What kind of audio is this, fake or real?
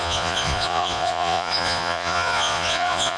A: fake